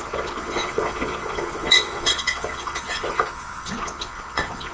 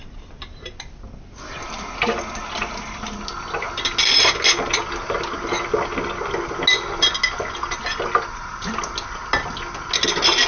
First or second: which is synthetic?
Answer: first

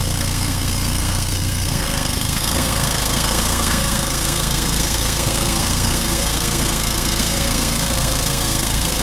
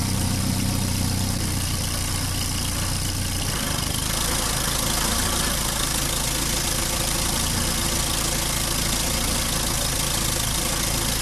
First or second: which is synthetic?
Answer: first